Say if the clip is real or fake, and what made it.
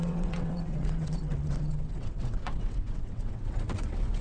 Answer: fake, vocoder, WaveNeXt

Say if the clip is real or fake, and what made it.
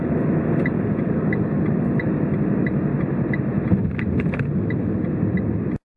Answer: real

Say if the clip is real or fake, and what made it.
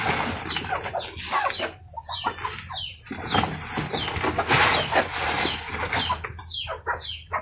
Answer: real